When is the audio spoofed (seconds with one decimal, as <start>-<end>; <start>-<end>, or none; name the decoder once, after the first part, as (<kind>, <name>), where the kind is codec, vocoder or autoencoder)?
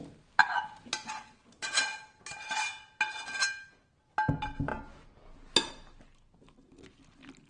none